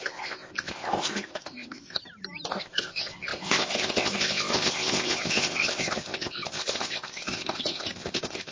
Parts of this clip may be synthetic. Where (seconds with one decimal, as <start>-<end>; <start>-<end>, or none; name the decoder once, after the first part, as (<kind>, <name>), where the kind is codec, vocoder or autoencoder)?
0.0-2.0 (codec, ZipCodec); 2.5-8.5